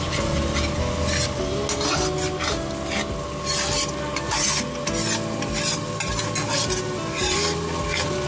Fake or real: real